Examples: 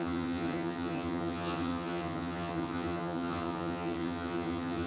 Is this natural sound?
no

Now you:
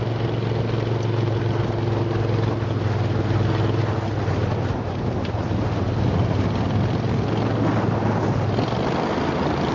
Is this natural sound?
yes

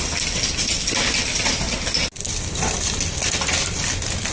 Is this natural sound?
yes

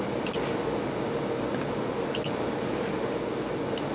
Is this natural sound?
yes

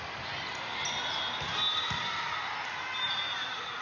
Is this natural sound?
yes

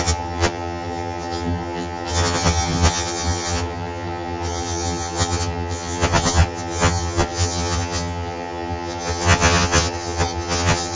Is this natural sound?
no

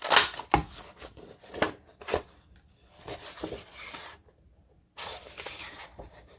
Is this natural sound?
yes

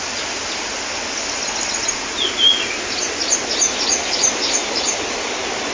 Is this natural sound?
yes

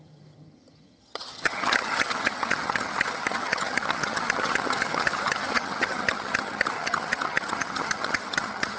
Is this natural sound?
no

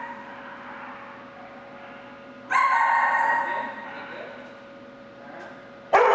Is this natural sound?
yes